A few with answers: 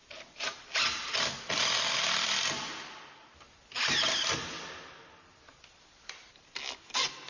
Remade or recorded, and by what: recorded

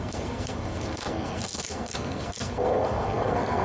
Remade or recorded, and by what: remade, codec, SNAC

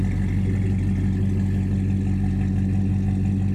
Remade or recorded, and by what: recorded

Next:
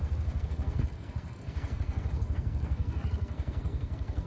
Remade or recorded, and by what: remade, codec, SNAC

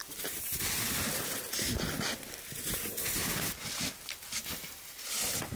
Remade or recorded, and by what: recorded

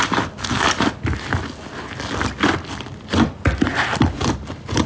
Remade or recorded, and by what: recorded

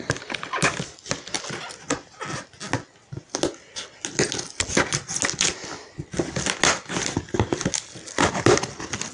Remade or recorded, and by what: recorded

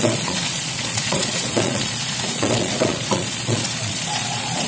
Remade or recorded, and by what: remade, vocoder, Vocos